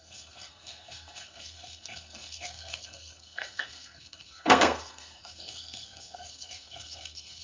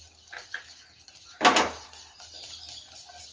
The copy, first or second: first